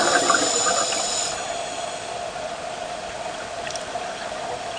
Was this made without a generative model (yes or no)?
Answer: yes